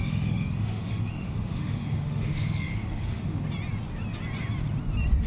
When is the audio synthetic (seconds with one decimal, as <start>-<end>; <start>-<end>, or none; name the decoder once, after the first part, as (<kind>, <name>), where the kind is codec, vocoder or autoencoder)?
0.0-3.2 (autoencoder, DAC-VAE)